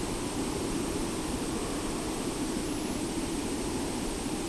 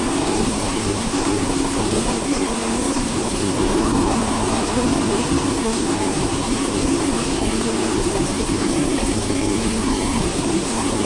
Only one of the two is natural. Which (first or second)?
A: first